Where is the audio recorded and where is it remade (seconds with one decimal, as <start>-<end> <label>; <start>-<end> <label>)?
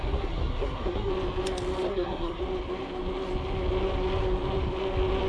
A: 0.0-1.1 remade; 1.1-1.9 recorded; 1.9-2.4 remade; 2.4-5.3 recorded